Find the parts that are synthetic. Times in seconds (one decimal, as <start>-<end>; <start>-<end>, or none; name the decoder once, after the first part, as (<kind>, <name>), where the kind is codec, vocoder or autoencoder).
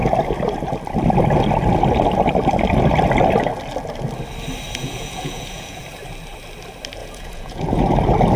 4.8-5.8 (vocoder, Vocos); 7.0-7.8